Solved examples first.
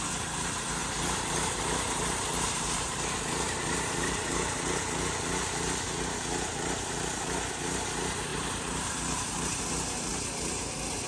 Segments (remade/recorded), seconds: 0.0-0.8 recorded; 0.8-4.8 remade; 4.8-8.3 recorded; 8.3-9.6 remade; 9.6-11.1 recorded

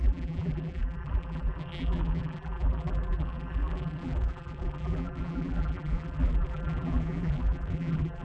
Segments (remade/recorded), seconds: 0.0-8.2 remade

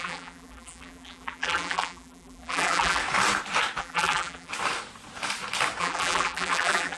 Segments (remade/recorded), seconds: 0.0-3.0 remade; 3.0-3.8 recorded; 3.8-4.5 remade; 4.5-5.8 recorded; 5.8-7.0 remade